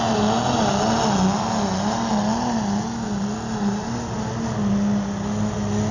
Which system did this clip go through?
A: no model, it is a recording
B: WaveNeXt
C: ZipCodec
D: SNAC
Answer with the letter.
A